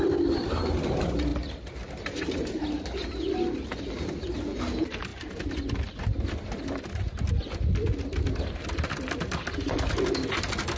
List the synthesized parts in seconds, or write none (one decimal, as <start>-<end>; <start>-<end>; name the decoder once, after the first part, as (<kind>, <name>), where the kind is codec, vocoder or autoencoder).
none

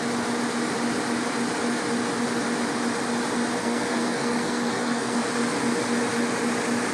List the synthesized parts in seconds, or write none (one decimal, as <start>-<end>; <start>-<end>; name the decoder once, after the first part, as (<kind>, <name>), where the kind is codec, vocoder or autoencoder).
3.6-5.2 (codec, SNAC)

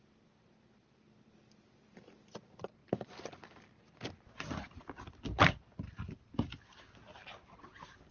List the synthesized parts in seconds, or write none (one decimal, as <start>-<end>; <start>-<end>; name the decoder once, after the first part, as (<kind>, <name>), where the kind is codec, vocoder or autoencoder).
none